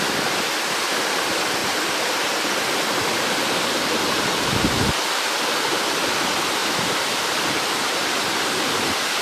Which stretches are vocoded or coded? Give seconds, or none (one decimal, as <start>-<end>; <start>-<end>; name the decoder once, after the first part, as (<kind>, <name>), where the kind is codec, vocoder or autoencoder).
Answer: 1.6-2.8 (vocoder, BigVGAN v2); 6.6-9.2